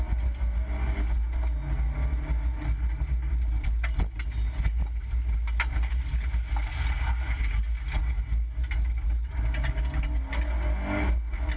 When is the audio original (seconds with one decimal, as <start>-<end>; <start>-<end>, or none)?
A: 0.0-11.6

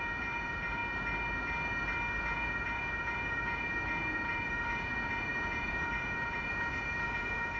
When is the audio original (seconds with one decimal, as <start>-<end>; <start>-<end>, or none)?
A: 0.8-2.2

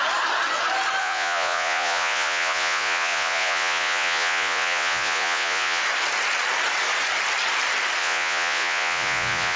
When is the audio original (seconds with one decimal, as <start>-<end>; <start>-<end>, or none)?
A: 0.0-1.0; 5.8-8.0

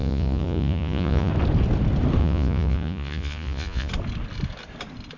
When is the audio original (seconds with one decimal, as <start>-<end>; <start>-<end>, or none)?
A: 1.3-2.2; 3.9-5.2

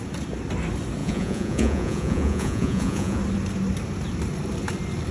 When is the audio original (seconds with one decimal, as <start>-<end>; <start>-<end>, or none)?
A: 0.0-1.0; 3.2-5.1

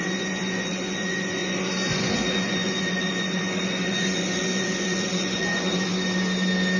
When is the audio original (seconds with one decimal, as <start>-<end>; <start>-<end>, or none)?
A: 5.9-6.8